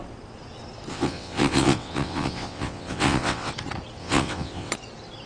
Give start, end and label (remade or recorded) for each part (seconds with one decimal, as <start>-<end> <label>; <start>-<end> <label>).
0.0-0.9 recorded; 0.9-3.5 remade; 3.5-4.0 recorded; 4.0-4.7 remade; 4.7-5.3 recorded